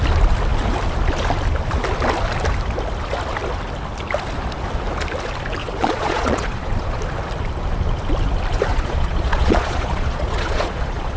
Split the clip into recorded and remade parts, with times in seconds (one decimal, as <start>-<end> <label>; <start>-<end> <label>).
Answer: 0.0-5.6 recorded; 5.6-7.0 remade; 7.0-8.7 recorded; 8.7-11.2 remade

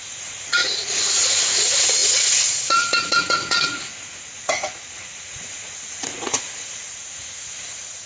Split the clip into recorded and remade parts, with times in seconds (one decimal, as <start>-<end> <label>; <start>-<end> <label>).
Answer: 0.0-8.1 remade

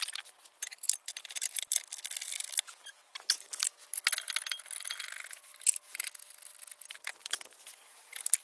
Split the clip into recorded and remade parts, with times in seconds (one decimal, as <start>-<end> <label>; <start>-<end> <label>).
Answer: 0.0-0.5 recorded; 0.5-4.3 remade; 4.3-8.4 recorded